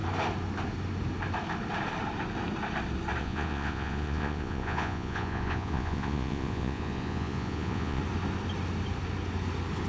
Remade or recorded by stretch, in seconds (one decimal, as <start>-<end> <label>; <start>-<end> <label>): 0.0-3.2 recorded; 3.2-8.0 remade; 8.0-9.9 recorded